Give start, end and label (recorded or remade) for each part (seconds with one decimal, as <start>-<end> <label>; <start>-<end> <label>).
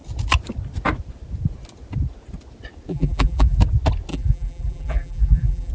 0.0-2.9 recorded; 2.9-3.6 remade; 3.6-4.1 recorded; 4.1-5.7 remade